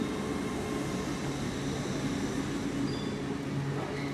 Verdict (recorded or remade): recorded